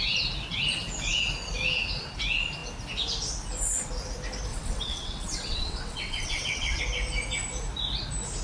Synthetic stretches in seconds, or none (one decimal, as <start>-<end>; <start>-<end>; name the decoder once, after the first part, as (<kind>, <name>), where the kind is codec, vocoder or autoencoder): 4.5-6.8 (vocoder, WaveNeXt)